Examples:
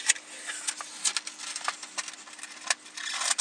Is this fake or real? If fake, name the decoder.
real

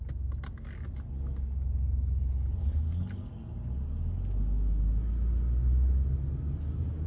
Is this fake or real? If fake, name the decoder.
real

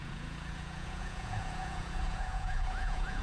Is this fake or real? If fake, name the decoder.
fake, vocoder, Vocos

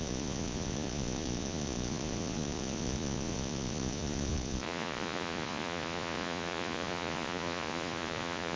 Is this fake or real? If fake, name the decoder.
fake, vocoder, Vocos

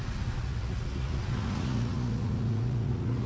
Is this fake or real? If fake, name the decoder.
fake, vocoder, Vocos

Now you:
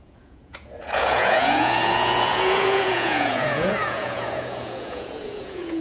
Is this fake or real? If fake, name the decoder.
fake, vocoder, Vocos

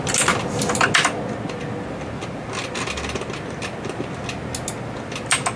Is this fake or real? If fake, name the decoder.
real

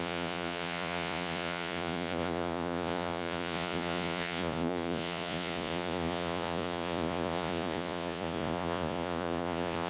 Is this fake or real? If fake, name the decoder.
fake, vocoder, Vocos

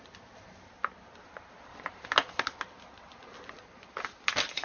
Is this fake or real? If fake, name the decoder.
real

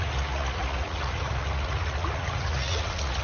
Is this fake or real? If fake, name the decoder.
fake, vocoder, Vocos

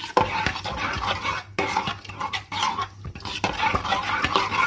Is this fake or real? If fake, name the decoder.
real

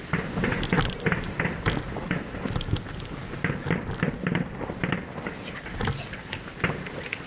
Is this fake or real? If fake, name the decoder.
real